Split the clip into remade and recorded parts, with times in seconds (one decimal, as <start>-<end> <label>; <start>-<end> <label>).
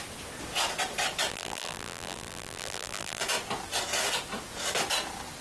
0.0-1.3 recorded; 1.3-3.2 remade; 3.2-5.4 recorded